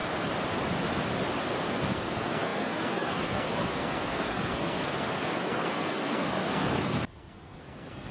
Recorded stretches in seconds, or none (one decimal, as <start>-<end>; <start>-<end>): 0.0-1.7